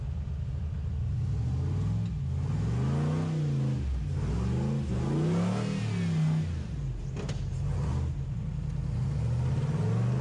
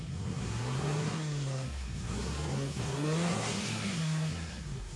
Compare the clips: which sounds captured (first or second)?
first